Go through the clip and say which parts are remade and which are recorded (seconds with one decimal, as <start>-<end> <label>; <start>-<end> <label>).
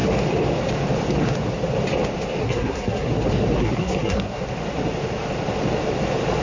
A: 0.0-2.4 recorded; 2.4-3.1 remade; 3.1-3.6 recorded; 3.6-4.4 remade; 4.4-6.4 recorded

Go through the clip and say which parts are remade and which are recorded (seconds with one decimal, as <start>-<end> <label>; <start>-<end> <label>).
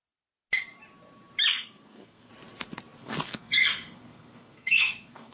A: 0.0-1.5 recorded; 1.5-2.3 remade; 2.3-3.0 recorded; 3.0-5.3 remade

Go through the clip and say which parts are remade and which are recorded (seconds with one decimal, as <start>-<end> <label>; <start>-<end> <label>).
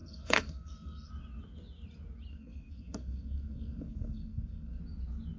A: 0.0-1.1 remade; 1.1-2.3 recorded; 2.3-4.8 remade; 4.8-5.4 recorded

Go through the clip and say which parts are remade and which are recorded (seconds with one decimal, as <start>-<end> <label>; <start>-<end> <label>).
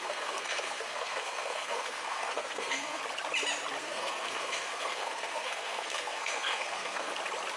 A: 0.0-3.0 remade; 3.0-3.8 recorded; 3.8-7.1 remade; 7.1-7.6 recorded